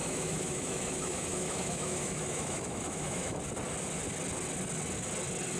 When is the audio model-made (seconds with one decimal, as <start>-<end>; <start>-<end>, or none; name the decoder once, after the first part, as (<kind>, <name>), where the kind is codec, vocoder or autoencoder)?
0.0-3.4 (autoencoder, DAC-VAE)